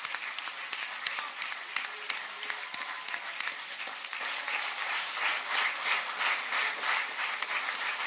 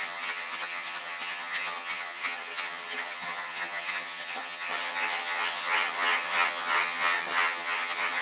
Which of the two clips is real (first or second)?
first